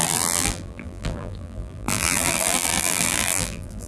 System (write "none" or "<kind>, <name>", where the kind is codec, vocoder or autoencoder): vocoder, BigVGAN v2